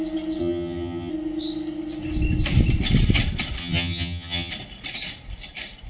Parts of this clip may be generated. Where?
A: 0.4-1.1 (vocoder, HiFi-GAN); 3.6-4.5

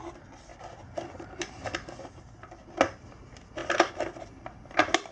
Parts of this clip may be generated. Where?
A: none

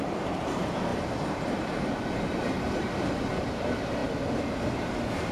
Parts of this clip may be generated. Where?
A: 0.0-4.0 (vocoder, BigVGAN v2); 4.7-5.3

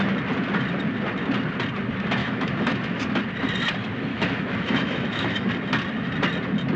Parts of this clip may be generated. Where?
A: 2.2-3.0 (autoencoder, DAC-VAE); 4.1-5.5

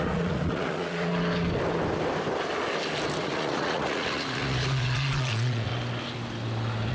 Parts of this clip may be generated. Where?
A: 0.0-1.1 (vocoder, Vocos); 3.2-5.7

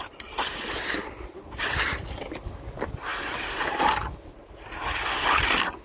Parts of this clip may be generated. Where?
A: none

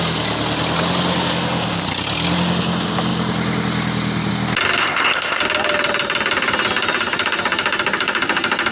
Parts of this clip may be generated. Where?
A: 4.8-5.4 (codec, ZipCodec)